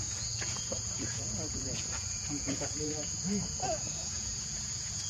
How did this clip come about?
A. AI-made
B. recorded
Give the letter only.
A